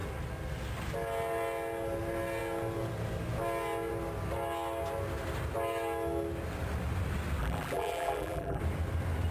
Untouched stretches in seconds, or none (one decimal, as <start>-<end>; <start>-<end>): 0.0-7.4; 8.6-9.3